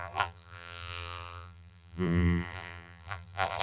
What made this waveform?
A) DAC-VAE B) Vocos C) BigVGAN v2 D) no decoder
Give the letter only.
C